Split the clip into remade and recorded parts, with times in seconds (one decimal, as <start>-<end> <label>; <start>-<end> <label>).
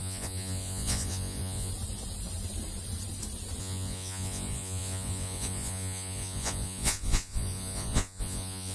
0.0-1.7 remade; 1.7-3.6 recorded; 3.6-8.7 remade